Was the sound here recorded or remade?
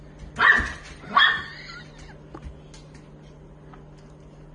recorded